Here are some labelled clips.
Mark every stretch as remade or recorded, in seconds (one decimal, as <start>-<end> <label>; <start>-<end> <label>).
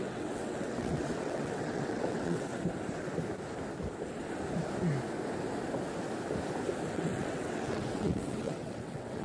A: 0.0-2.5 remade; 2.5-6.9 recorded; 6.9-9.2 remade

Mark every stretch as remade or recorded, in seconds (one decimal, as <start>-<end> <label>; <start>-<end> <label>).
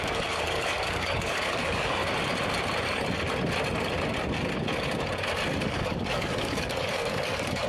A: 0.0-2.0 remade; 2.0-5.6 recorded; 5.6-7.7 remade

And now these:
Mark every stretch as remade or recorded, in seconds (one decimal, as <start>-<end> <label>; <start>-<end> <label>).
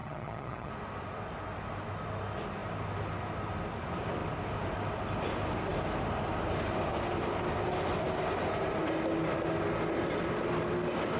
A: 0.0-0.7 remade; 0.7-11.2 recorded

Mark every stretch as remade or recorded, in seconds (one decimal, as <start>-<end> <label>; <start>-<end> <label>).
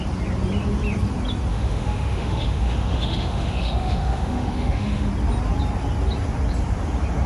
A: 0.0-1.5 recorded; 1.5-5.1 remade; 5.1-7.3 recorded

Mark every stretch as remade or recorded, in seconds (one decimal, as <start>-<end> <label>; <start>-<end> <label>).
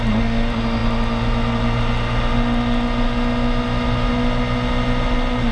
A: 0.0-5.5 recorded